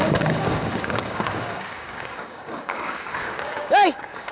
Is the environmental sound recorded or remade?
remade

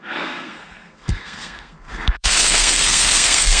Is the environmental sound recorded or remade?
remade